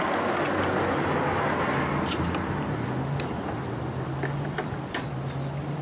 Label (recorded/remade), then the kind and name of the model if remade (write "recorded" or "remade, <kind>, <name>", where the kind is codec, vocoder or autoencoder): recorded